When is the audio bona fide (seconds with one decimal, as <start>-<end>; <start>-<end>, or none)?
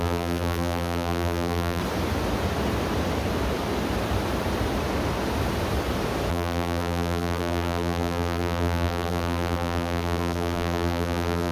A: 1.8-6.3